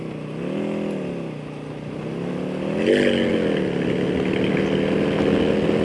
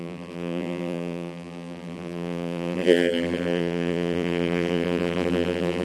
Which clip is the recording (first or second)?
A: first